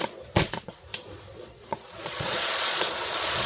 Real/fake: fake